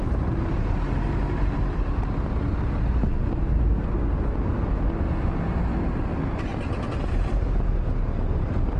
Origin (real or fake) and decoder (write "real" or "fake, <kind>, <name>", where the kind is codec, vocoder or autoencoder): real